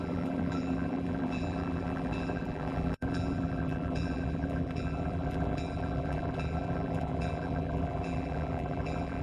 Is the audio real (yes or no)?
no